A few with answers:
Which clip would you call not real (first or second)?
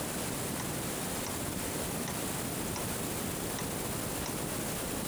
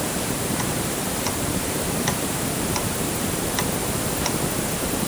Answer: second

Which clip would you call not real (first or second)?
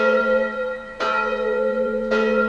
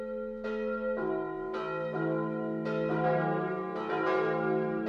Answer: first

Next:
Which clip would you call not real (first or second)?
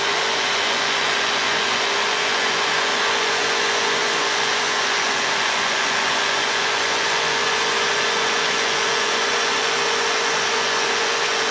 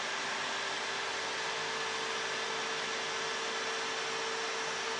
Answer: first